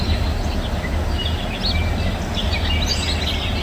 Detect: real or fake real